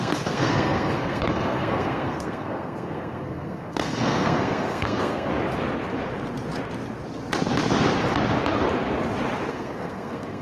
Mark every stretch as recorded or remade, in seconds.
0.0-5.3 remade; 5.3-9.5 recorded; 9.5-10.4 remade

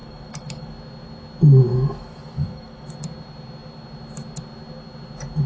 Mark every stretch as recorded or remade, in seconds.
0.0-0.7 remade; 0.7-1.7 recorded; 1.7-2.9 remade; 2.9-5.5 recorded